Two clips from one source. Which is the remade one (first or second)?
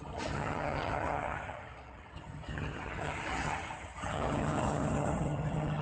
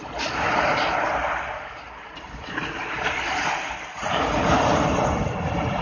first